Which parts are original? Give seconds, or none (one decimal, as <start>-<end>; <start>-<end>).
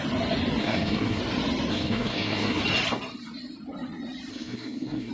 0.0-0.6; 1.2-1.7; 2.6-4.3